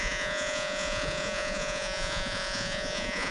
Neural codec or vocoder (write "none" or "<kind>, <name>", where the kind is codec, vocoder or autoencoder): vocoder, Vocos